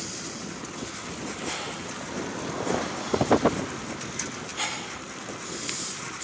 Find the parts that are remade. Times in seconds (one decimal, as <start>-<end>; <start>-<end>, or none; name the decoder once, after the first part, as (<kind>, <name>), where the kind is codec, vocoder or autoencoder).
none